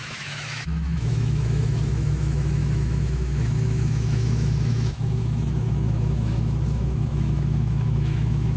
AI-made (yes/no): yes